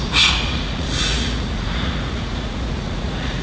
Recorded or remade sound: remade